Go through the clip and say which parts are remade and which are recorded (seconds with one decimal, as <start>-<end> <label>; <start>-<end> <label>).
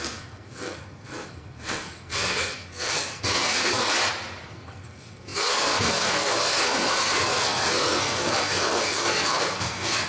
0.0-3.9 remade; 3.9-4.5 recorded; 4.5-10.1 remade